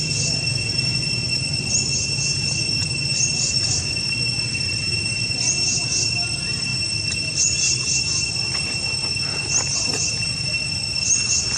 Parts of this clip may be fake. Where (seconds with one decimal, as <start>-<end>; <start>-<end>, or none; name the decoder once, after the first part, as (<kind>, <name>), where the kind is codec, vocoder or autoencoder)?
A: 0.9-1.7 (vocoder, Vocos); 2.8-4.0